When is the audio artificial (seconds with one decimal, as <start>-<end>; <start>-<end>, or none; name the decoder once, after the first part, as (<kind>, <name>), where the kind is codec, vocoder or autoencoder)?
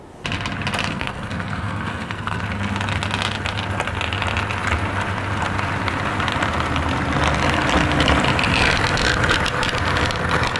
0.8-2.4 (codec, SNAC)